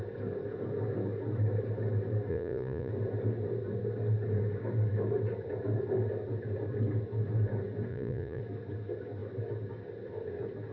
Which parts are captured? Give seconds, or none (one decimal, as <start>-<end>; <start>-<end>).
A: 0.0-2.3; 2.9-7.9; 8.4-10.7